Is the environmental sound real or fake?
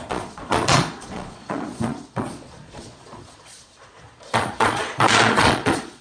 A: fake